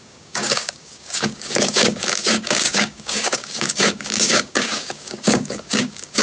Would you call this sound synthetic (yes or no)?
yes